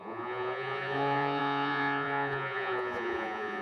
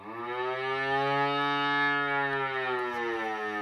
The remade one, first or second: first